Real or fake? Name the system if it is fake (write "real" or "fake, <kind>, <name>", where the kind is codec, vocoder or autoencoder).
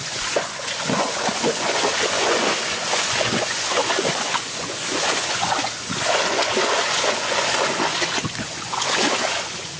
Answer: fake, vocoder, Vocos